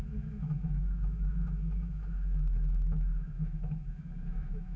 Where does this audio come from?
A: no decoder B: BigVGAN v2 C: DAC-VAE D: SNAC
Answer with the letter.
C